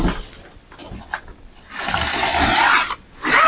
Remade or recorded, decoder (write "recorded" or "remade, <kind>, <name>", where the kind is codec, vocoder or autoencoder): recorded